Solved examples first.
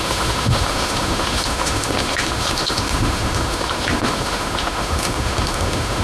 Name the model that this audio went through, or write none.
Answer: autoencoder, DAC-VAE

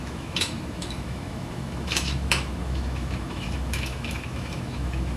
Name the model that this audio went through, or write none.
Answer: autoencoder, DAC-VAE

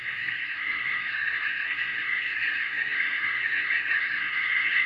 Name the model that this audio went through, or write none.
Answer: codec, SNAC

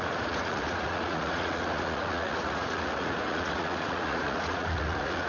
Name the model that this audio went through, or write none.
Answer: vocoder, Vocos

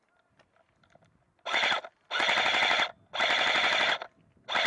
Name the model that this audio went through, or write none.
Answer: none